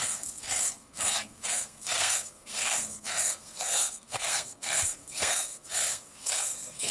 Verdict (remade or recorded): remade